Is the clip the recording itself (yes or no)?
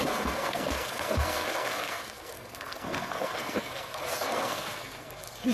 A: no